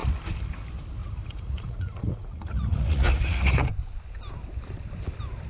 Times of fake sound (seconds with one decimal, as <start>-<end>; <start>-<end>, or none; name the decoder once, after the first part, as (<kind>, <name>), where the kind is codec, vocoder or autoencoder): 1.0-3.7 (vocoder, Vocos)